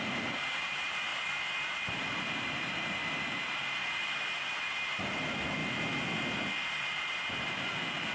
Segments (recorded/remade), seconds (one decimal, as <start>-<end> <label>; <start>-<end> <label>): 0.0-5.6 remade; 5.6-6.7 recorded; 6.7-8.1 remade